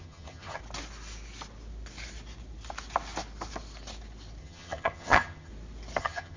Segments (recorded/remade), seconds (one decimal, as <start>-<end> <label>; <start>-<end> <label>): 0.0-0.6 remade; 0.6-4.4 recorded; 4.4-5.5 remade; 5.5-6.0 recorded; 6.0-6.4 remade